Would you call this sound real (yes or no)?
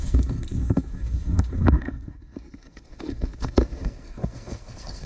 no